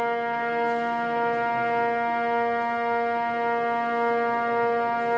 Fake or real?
real